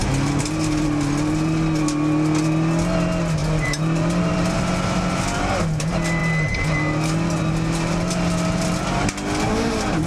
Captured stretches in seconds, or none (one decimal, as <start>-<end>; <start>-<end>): 0.0-3.4; 4.6-10.1